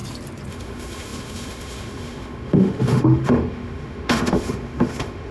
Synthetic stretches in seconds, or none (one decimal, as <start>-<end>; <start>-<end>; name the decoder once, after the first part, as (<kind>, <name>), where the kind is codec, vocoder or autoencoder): 0.5-5.3 (autoencoder, DAC-VAE)